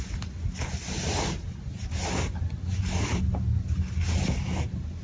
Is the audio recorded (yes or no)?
yes